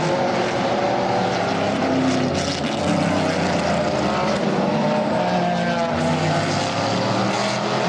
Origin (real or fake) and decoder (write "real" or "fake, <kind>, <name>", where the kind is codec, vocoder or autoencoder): real